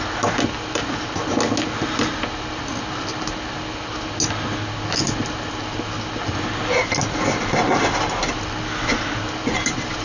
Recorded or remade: recorded